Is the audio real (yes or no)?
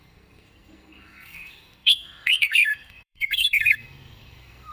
no